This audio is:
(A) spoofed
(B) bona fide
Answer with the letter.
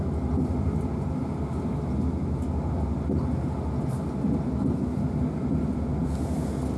B